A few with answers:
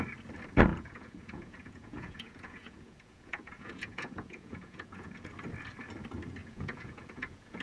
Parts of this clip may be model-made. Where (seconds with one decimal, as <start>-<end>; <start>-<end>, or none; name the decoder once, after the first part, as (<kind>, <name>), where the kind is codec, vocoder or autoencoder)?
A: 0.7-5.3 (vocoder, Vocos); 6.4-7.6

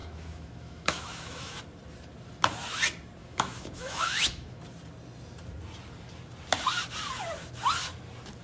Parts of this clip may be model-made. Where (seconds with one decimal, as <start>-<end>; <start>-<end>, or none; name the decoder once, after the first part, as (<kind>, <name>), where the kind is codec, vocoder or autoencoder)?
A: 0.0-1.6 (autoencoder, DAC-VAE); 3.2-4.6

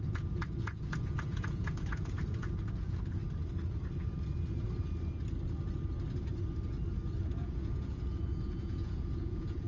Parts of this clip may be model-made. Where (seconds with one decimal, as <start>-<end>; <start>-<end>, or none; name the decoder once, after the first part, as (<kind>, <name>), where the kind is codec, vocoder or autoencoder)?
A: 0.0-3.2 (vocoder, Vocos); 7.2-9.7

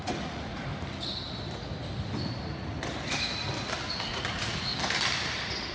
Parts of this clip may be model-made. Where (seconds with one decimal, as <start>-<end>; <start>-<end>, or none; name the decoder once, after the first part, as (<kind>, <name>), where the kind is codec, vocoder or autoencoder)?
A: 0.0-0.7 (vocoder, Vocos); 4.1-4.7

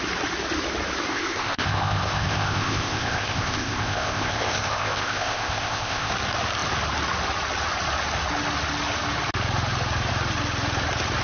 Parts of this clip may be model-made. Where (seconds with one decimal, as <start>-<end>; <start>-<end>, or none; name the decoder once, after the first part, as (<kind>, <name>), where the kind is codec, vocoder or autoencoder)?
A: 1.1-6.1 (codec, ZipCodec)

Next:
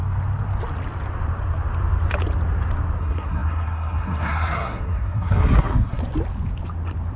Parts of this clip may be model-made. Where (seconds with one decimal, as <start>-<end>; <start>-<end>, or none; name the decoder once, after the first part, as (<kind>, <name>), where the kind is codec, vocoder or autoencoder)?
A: 3.0-6.0 (codec, SNAC)